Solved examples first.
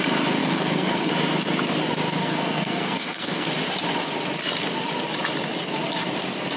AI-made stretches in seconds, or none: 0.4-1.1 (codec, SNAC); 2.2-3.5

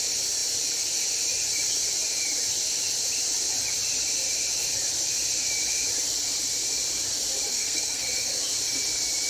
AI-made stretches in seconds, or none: 7.5-8.4 (codec, SNAC)

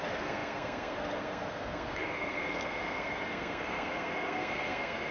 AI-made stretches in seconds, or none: 0.0-5.1 (codec, SNAC)

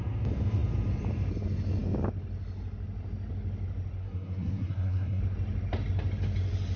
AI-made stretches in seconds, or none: 4.0-5.2 (codec, SNAC)